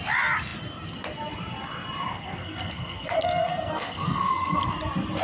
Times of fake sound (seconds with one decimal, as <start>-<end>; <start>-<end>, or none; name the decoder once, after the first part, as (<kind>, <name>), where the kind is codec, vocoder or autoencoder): 2.1-4.7 (codec, SNAC)